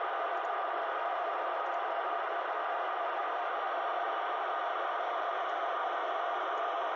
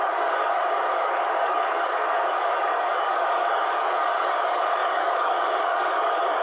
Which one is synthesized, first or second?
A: second